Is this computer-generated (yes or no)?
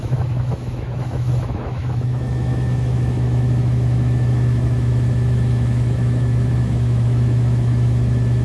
yes